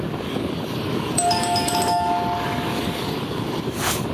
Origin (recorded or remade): remade